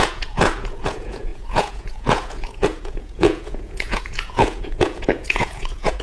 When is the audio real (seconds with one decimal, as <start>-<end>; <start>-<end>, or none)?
none